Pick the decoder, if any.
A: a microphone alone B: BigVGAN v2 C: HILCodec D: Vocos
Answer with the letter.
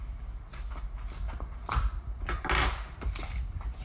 A